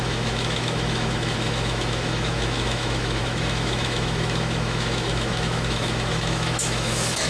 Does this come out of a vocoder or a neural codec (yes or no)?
yes